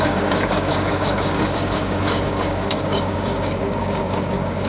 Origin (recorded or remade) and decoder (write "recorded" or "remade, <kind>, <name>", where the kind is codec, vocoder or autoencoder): remade, codec, DAC